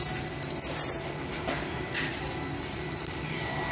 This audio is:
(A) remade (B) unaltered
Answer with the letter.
B